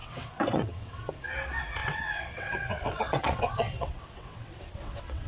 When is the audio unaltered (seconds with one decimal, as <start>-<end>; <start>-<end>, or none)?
1.1-1.8